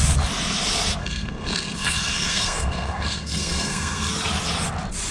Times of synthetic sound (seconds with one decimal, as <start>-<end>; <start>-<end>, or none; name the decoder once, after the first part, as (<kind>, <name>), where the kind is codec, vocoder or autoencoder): 1.0-4.1 (codec, SNAC)